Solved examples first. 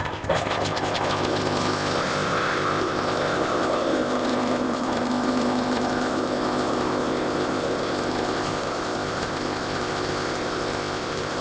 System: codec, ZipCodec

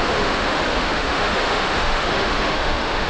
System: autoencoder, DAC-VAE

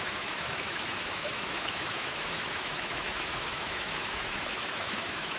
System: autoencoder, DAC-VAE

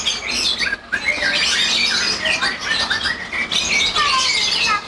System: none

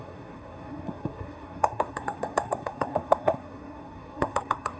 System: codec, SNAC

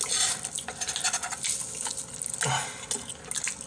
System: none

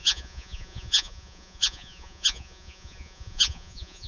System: vocoder, Vocos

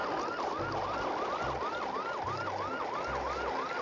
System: none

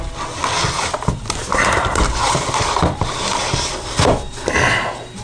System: none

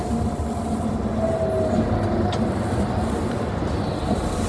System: none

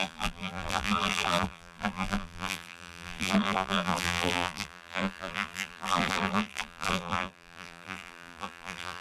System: vocoder, BigVGAN v2